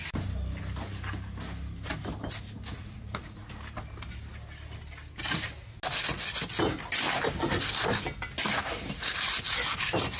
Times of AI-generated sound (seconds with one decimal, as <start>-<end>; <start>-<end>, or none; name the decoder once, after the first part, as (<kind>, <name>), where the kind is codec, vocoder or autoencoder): 2.7-3.4 (vocoder, Vocos)